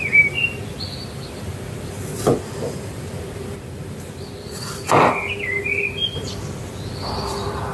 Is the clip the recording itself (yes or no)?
no